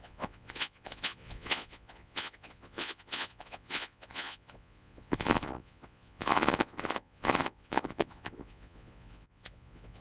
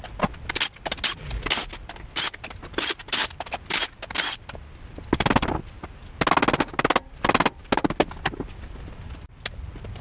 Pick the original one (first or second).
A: second